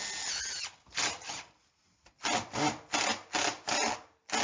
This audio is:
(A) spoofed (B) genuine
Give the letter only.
B